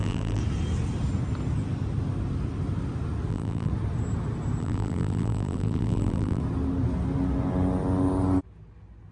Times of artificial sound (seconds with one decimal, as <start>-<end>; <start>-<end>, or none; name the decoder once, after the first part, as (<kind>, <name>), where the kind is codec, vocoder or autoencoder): 0.0-0.4 (vocoder, BigVGAN v2); 3.3-3.7; 4.6-6.4